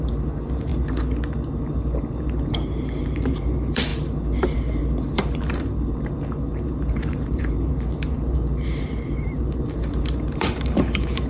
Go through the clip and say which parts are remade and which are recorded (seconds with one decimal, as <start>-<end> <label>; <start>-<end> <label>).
0.0-0.7 remade; 0.7-1.5 recorded; 1.5-11.3 remade